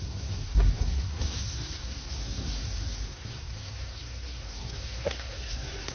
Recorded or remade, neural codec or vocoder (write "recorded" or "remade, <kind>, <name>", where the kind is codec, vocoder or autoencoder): remade, codec, SNAC